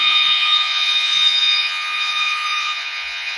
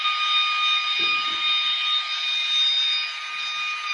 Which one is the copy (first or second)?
first